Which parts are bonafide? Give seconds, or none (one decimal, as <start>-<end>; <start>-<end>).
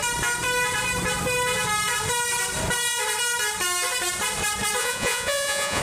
0.0-4.8